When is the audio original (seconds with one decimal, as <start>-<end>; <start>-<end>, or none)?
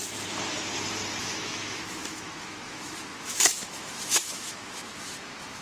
0.0-1.2